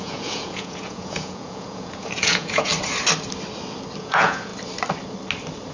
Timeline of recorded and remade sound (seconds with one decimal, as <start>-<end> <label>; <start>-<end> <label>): 0.0-2.7 remade; 2.7-4.0 recorded; 4.0-4.5 remade; 4.5-5.7 recorded